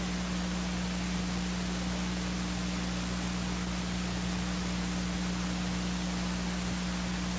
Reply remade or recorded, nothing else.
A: recorded